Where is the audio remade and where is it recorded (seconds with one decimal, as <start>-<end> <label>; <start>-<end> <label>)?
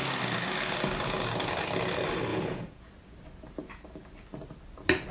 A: 0.0-2.3 recorded; 2.3-2.9 remade; 2.9-5.1 recorded